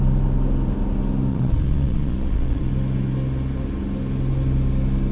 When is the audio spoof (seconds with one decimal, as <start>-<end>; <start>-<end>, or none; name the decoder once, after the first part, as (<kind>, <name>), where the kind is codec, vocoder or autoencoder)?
1.3-2.7 (vocoder, Vocos)